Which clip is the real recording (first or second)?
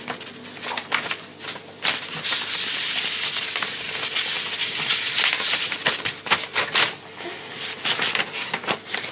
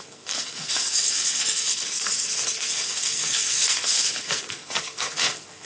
first